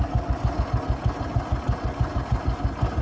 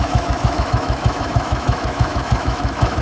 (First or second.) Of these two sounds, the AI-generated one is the second